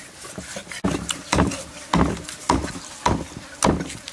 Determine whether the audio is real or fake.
real